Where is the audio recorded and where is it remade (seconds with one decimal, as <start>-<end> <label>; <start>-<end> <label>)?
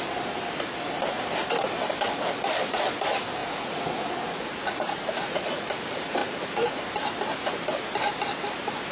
0.0-3.4 recorded; 3.4-5.6 remade; 5.6-6.2 recorded; 6.2-6.8 remade; 6.8-8.9 recorded